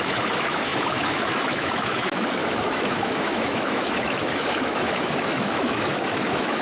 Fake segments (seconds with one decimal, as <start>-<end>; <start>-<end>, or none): 0.0-6.6

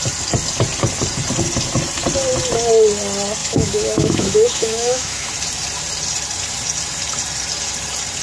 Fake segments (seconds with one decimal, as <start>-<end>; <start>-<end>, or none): 3.4-5.3

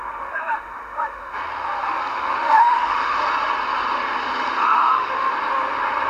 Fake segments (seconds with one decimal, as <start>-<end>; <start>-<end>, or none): 0.0-1.4; 2.1-3.2; 4.6-5.3

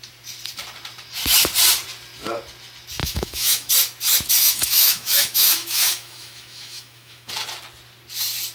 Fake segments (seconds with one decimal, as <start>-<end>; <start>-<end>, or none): 3.0-3.7; 4.4-7.3